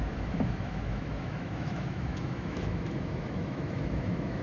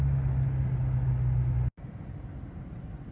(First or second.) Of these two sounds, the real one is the second